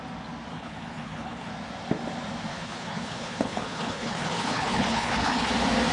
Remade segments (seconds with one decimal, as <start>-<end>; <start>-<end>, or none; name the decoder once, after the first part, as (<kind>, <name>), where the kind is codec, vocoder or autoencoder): 0.5-1.5 (codec, HILCodec); 2.5-5.5